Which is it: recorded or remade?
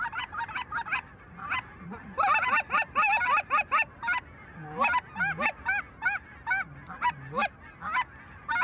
recorded